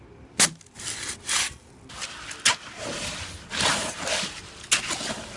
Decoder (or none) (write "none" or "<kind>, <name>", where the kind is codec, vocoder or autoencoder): none